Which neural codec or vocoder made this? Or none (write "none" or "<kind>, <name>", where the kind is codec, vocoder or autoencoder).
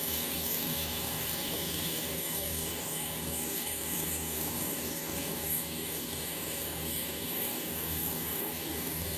codec, DAC